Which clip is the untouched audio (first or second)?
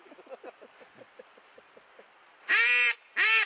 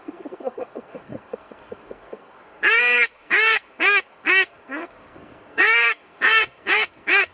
first